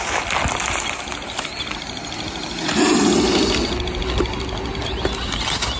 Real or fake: real